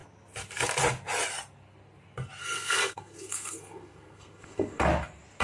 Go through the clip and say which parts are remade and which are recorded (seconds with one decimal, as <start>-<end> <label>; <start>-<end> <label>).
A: 0.0-2.4 recorded; 2.4-4.8 remade; 4.8-5.4 recorded